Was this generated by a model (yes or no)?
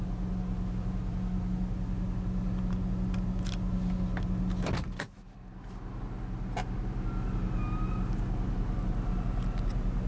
no